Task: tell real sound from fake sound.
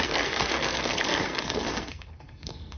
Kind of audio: fake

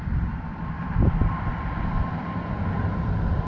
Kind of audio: fake